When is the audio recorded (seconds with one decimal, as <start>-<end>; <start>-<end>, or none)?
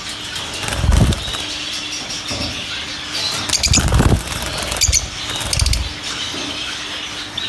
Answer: 0.0-7.5